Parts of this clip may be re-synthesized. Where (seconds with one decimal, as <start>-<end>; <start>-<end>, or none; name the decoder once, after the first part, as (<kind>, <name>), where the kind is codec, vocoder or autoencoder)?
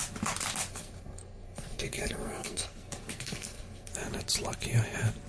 0.7-3.9 (codec, SNAC)